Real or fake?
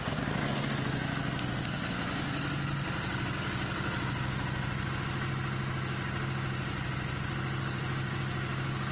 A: real